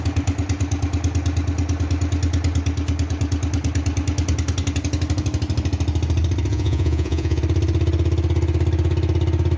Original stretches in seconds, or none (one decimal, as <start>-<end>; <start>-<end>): 0.0-6.5; 7.4-9.6